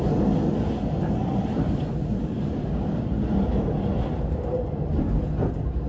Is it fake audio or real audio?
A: real